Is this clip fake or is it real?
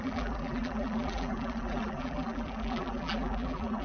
fake